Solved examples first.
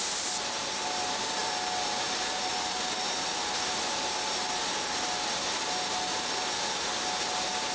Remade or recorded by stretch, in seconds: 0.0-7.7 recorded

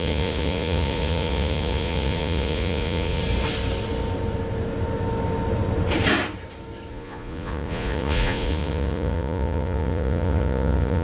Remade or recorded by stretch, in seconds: 0.0-3.2 remade; 3.2-6.9 recorded; 6.9-11.0 remade

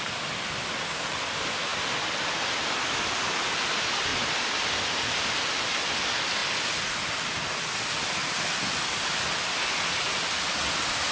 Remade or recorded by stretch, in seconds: 0.0-4.1 recorded; 4.1-5.0 remade; 5.0-11.1 recorded

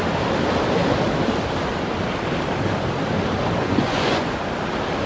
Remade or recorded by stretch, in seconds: 0.0-3.6 recorded; 3.6-4.4 remade; 4.4-5.1 recorded

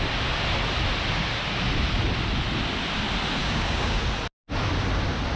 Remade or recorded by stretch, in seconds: 0.0-3.4 recorded; 3.4-4.0 remade; 4.0-5.4 recorded

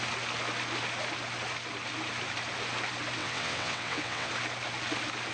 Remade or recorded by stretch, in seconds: 0.0-3.2 recorded; 3.2-4.3 remade; 4.3-5.3 recorded

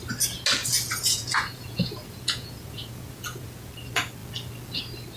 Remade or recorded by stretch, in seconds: 0.0-0.6 recorded; 0.6-3.7 remade; 3.7-5.2 recorded